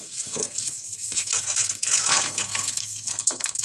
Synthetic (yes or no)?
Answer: yes